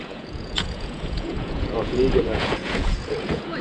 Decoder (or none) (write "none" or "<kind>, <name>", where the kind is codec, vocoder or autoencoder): vocoder, Vocos